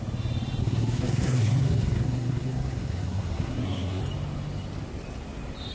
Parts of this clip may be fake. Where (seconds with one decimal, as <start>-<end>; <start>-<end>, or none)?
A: 0.6-4.0